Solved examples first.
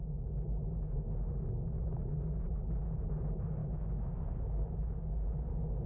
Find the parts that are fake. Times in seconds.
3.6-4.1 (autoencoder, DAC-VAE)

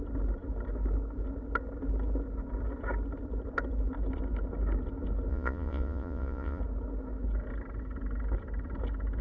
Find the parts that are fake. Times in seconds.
5.3-6.6 (vocoder, Vocos)

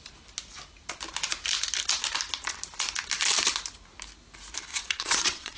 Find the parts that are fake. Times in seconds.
4.7-5.6 (vocoder, WaveNeXt)

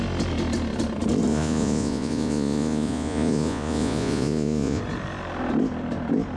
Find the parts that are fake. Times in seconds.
1.3-4.8 (vocoder, Vocos)

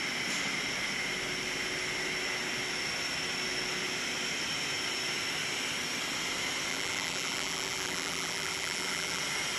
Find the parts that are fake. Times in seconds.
6.7-9.2 (vocoder, BigVGAN v2)

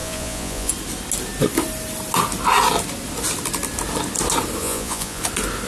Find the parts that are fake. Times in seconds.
0.0-0.7 (vocoder, Vocos); 4.6-5.2